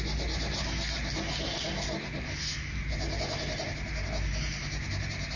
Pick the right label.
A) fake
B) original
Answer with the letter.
B